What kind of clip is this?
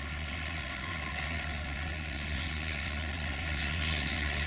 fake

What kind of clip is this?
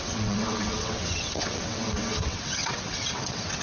fake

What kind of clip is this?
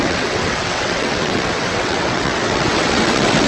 fake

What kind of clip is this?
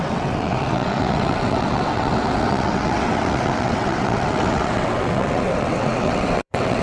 fake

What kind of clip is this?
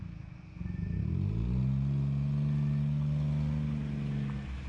real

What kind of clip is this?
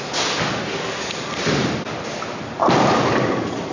real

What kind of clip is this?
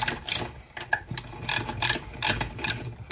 real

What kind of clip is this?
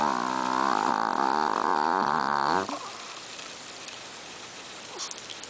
real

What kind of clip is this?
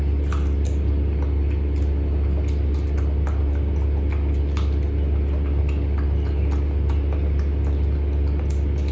real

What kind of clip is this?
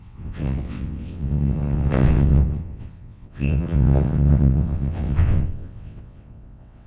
fake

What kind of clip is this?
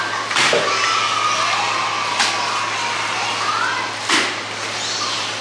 real